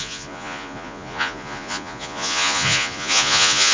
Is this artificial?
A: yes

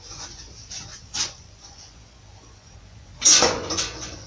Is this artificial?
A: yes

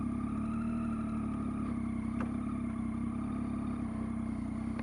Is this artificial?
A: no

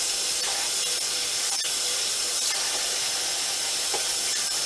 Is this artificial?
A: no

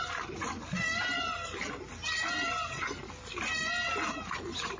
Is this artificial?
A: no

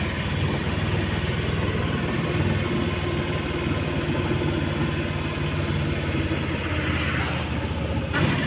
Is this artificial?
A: no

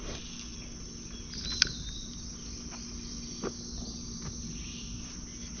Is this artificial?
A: no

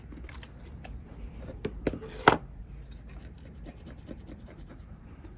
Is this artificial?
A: no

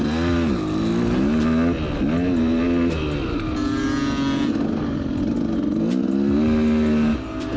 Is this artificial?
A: no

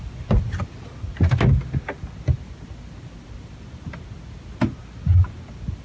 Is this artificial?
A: no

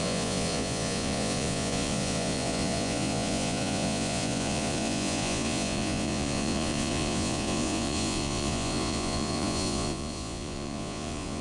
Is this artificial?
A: yes